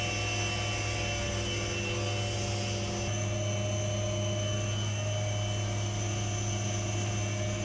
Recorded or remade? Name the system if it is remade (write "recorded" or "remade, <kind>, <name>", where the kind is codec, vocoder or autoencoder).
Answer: recorded